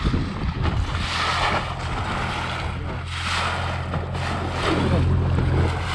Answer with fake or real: real